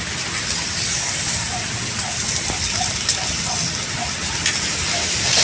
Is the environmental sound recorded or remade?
recorded